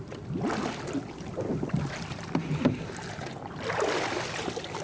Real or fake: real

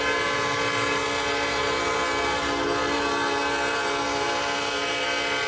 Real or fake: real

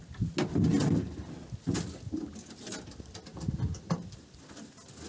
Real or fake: real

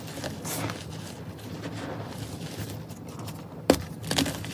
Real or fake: real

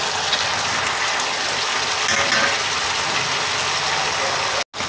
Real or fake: real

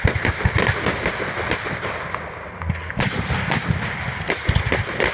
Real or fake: real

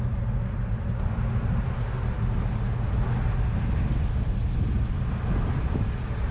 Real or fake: real